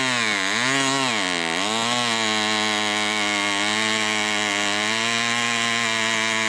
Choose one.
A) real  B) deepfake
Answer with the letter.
A